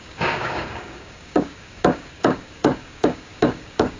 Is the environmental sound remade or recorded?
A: remade